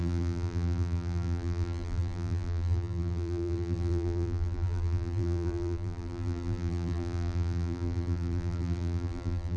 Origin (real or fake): fake